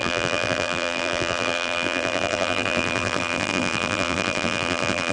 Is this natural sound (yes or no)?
no